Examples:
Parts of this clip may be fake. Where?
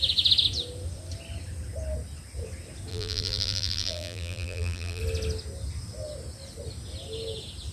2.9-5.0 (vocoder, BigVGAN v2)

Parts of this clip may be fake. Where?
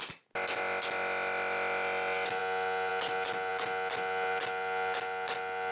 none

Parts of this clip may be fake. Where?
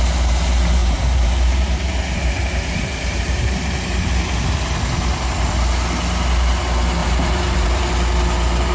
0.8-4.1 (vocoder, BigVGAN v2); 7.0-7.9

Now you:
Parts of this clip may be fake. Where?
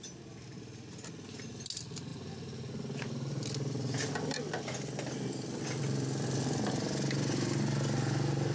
2.1-6.7 (vocoder, BigVGAN v2)